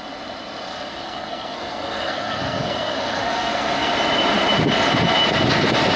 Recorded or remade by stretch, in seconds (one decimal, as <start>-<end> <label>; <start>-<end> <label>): 0.0-0.7 recorded; 0.7-3.9 remade; 3.9-6.0 recorded